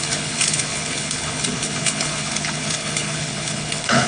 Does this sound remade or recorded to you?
remade